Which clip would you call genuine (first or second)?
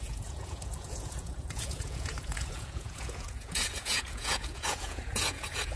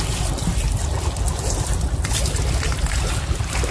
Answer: second